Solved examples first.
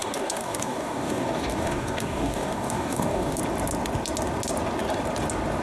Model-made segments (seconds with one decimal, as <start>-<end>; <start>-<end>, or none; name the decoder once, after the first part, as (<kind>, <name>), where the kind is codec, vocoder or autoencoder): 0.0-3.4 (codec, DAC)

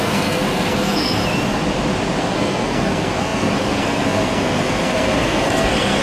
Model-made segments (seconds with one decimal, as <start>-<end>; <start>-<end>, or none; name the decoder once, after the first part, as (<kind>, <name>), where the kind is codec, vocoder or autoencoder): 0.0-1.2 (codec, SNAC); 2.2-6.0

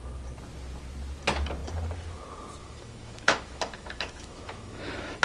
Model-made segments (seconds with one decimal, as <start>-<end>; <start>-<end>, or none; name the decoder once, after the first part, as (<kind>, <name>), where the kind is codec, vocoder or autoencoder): 2.6-5.2 (autoencoder, DAC-VAE)

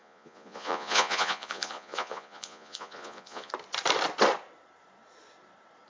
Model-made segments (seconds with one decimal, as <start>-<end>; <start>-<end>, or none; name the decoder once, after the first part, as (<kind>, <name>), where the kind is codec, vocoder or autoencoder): 0.0-3.5 (vocoder, Vocos)

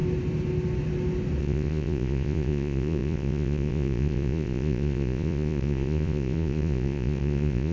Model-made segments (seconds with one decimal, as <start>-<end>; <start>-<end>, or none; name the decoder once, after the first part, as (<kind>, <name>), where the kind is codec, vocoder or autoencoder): 1.4-7.7 (vocoder, Vocos)

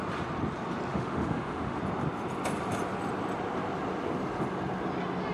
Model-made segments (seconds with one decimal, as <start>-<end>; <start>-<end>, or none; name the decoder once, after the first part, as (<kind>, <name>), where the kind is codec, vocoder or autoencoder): 0.9-1.8 (autoencoder, DAC-VAE)